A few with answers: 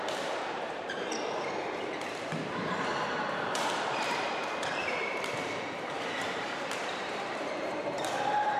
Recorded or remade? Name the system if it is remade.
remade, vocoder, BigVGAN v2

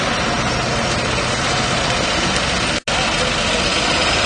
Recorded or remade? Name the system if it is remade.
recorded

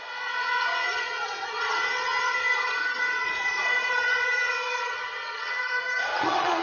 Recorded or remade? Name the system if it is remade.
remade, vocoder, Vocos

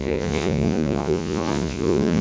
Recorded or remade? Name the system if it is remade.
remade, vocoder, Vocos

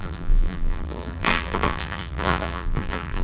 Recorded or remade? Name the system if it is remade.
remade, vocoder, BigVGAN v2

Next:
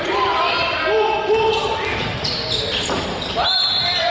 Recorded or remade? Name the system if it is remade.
recorded